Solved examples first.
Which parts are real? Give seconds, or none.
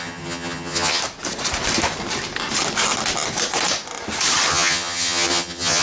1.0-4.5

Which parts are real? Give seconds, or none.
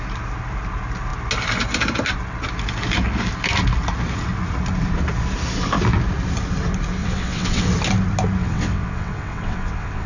0.0-7.0; 7.7-8.4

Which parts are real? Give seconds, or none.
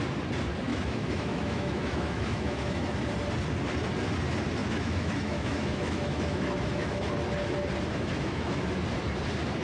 0.0-0.7; 3.1-4.6; 7.1-8.1; 8.7-9.6